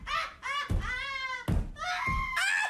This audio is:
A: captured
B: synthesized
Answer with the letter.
A